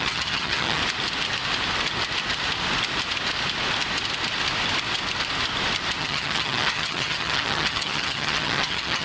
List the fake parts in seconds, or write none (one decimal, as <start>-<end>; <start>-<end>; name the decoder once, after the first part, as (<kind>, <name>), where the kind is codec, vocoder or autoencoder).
0.0-0.8 (vocoder, HiFi-GAN); 6.0-9.0